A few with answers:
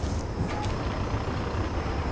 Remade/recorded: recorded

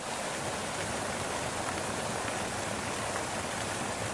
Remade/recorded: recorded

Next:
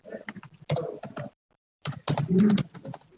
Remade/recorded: recorded